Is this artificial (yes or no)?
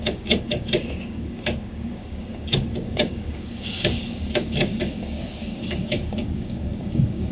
yes